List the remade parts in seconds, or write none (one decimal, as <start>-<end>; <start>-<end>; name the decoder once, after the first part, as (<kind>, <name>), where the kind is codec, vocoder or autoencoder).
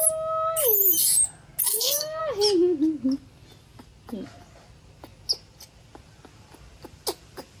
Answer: 1.7-2.2 (codec, SNAC)